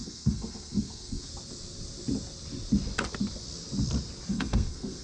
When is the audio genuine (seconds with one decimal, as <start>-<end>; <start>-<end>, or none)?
1.3-4.3